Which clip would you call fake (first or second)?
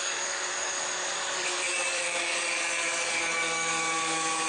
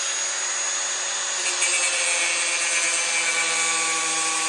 first